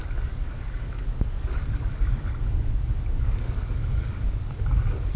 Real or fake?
fake